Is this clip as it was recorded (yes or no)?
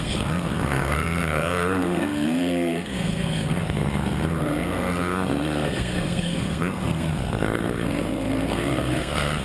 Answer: no